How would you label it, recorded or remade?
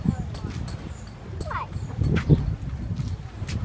recorded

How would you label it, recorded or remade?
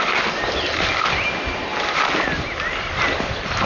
recorded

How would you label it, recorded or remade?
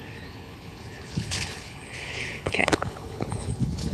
remade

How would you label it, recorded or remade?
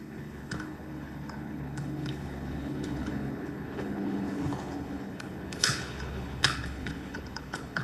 remade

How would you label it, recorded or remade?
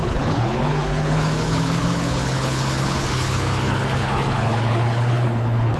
remade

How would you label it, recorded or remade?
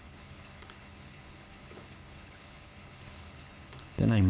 remade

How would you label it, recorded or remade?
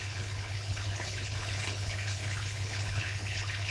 remade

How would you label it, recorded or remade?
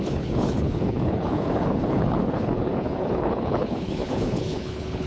remade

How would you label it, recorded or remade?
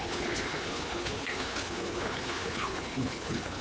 remade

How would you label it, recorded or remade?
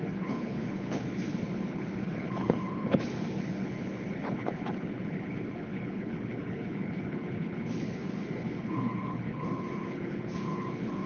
remade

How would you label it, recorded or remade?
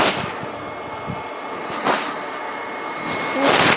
recorded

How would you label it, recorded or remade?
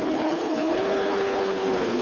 remade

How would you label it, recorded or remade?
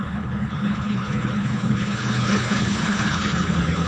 remade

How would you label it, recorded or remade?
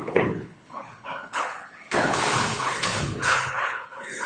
remade